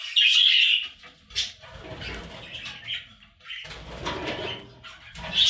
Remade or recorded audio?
recorded